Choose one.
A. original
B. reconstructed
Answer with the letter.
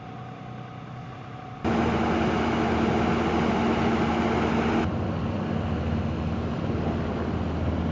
A